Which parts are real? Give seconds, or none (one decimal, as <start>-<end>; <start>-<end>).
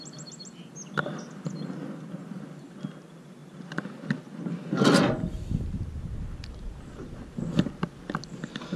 0.0-8.8